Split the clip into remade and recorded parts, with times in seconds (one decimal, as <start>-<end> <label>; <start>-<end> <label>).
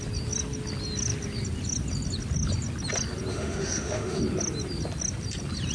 0.0-3.3 recorded; 3.3-4.2 remade; 4.2-5.7 recorded